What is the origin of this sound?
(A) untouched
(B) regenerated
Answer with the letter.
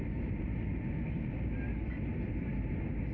A